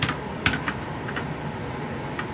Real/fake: real